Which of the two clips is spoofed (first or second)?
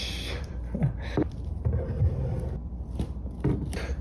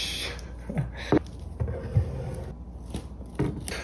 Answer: first